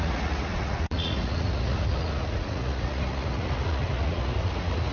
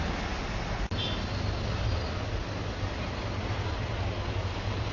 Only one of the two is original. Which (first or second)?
second